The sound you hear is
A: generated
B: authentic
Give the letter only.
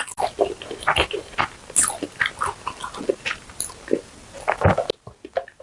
B